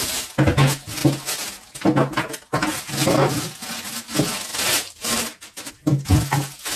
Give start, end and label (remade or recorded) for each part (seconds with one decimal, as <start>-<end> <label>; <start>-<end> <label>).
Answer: 0.0-4.5 recorded; 4.5-5.7 remade; 5.7-6.8 recorded